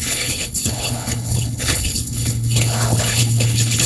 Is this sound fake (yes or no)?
yes